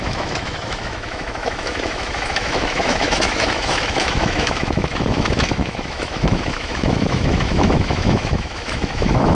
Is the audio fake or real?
fake